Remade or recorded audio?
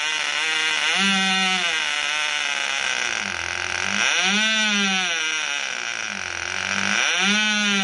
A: recorded